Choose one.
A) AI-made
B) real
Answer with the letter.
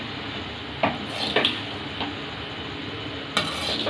B